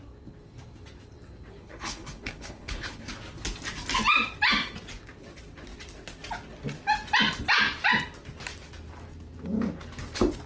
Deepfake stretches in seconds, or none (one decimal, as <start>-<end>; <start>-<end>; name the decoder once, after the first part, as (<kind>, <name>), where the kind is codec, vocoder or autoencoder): 1.6-3.1 (codec, HILCodec)